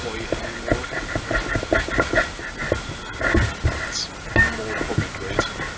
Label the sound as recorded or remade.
recorded